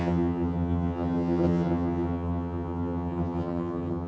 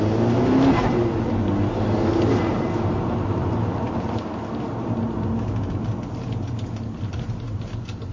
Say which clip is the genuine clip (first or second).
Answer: second